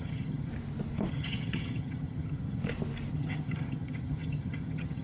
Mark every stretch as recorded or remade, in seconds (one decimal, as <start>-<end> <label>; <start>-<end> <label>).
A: 0.0-0.5 remade; 0.5-1.1 recorded; 1.1-2.6 remade; 2.6-3.1 recorded; 3.1-5.0 remade